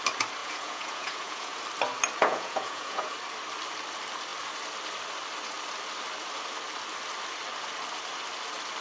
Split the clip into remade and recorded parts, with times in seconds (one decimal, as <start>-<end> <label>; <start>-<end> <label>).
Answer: 0.0-0.4 recorded; 0.4-1.6 remade; 1.6-2.2 recorded; 2.2-3.1 remade; 3.1-8.8 recorded